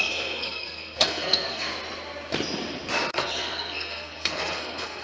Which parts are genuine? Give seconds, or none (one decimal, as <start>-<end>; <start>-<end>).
1.7-3.1